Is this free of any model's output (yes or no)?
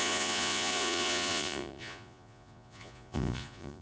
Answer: no